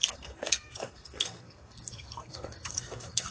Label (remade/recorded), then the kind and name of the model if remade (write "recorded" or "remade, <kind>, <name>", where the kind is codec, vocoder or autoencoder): remade, codec, SNAC